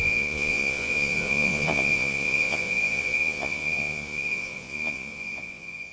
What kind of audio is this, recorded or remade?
remade